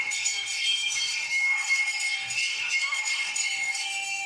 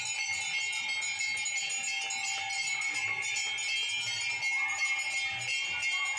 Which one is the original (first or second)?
second